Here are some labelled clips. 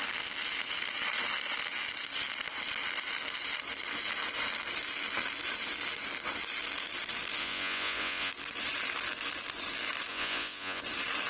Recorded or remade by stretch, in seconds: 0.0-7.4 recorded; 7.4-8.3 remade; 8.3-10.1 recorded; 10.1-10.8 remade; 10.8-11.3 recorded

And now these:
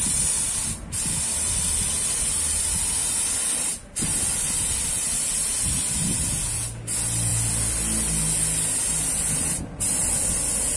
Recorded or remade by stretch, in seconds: 0.0-10.8 recorded

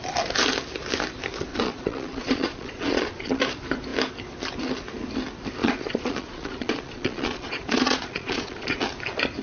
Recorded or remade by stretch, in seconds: 0.0-1.5 recorded; 1.5-3.4 remade; 3.4-5.6 recorded; 5.6-8.8 remade; 8.8-9.4 recorded

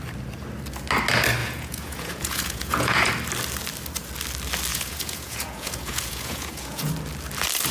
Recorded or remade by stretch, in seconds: 0.0-1.4 recorded; 1.4-3.1 remade; 3.1-4.7 recorded; 4.7-6.9 remade; 6.9-7.7 recorded

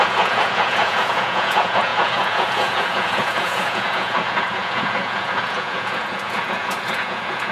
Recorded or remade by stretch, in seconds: 0.0-7.5 remade

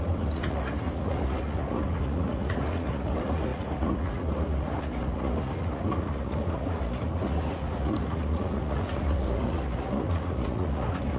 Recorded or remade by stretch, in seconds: 0.0-11.2 remade

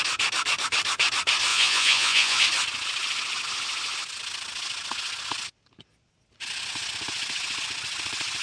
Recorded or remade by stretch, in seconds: 0.0-1.5 recorded; 1.5-2.4 remade; 2.4-8.4 recorded

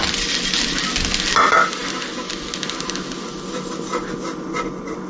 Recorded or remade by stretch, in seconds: 0.0-5.1 recorded